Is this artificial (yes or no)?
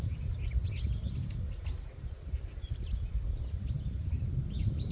no